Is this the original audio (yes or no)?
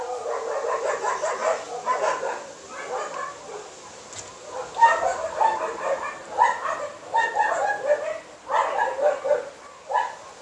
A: yes